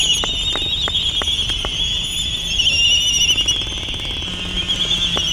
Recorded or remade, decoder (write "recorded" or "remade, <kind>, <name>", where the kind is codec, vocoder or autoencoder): recorded